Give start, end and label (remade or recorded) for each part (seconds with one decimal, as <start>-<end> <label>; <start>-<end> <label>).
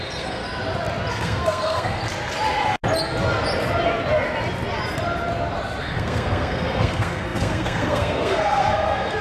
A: 0.0-0.4 remade; 0.4-1.1 recorded; 1.1-2.0 remade; 2.0-5.8 recorded; 5.8-9.2 remade